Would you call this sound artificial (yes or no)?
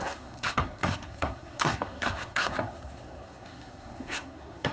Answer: yes